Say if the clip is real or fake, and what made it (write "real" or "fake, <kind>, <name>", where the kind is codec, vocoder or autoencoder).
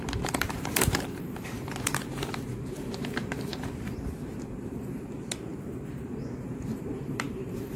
fake, vocoder, BigVGAN v2